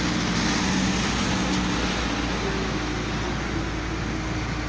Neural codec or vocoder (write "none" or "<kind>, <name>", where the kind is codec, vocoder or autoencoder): none